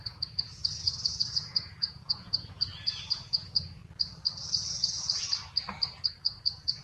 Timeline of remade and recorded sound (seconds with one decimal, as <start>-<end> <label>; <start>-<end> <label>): 0.0-3.8 remade; 3.8-6.1 recorded; 6.1-6.8 remade